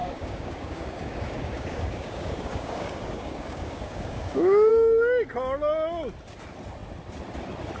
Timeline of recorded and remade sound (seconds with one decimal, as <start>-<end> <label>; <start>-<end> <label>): 0.0-4.7 remade; 4.7-7.8 recorded